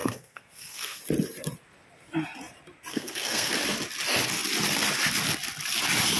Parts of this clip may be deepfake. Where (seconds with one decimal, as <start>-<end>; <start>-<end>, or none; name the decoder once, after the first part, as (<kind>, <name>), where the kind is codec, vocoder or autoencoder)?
0.0-1.0 (codec, SNAC); 2.9-3.5